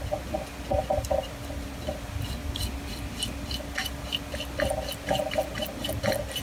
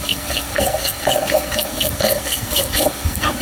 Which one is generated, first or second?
second